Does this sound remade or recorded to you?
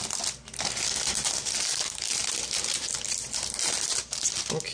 recorded